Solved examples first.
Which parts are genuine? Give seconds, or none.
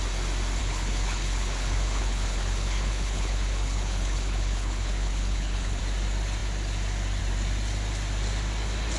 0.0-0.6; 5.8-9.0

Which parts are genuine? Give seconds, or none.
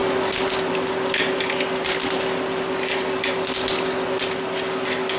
0.0-5.2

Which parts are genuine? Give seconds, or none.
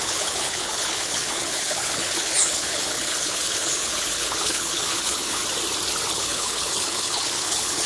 5.4-6.1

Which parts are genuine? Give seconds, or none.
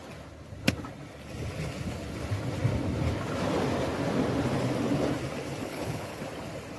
0.0-5.6; 6.2-6.8